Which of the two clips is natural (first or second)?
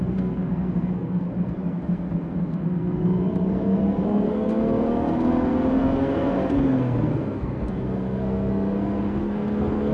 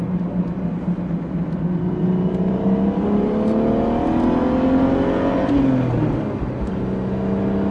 second